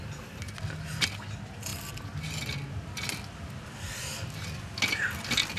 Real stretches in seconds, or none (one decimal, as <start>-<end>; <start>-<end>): 0.0-5.6